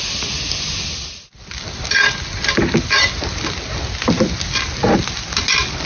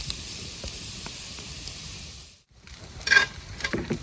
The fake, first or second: second